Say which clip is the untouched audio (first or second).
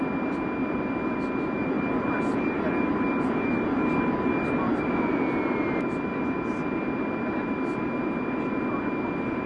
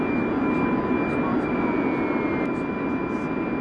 second